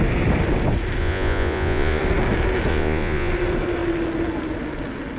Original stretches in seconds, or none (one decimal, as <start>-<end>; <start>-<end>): 0.0-1.0; 2.0-2.7; 3.3-5.2